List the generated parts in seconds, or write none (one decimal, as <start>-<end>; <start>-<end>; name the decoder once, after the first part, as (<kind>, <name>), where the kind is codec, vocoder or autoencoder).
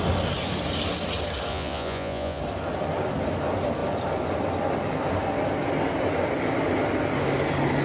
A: 1.5-2.4 (vocoder, Vocos)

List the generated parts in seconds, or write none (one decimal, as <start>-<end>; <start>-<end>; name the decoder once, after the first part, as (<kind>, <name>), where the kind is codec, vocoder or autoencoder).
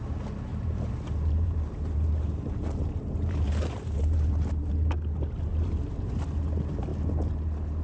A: 0.5-4.7 (vocoder, BigVGAN v2); 5.5-6.1